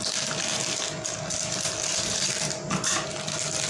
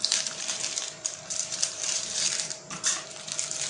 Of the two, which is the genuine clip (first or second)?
first